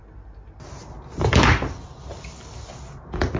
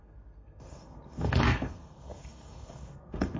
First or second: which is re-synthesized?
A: second